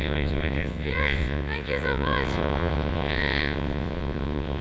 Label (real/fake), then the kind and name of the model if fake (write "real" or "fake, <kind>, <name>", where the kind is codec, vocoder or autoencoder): fake, vocoder, WaveNeXt